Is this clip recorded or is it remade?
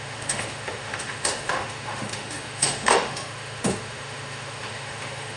remade